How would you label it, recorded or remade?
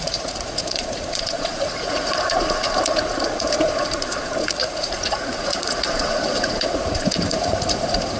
remade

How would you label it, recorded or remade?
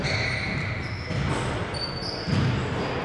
recorded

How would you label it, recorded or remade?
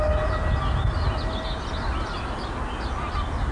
recorded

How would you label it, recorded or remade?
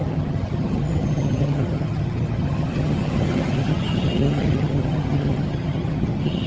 remade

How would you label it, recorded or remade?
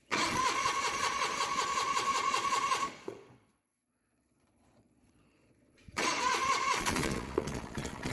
remade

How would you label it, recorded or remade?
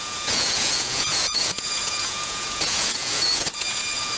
remade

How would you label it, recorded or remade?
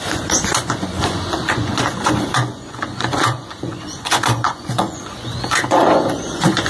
remade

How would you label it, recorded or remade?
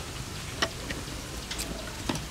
recorded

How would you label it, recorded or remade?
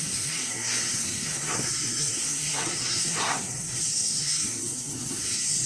remade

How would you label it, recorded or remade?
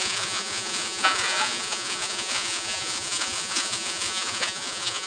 remade